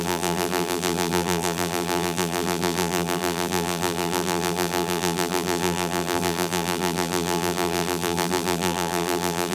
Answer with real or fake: fake